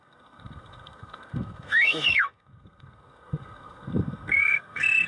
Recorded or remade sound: remade